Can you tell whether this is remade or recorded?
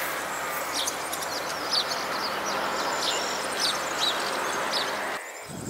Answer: recorded